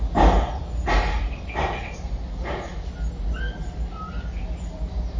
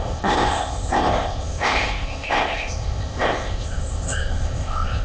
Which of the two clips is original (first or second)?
first